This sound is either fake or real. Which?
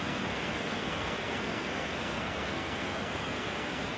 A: fake